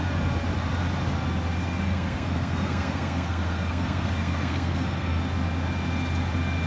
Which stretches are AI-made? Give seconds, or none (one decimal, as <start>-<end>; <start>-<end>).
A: 1.6-5.2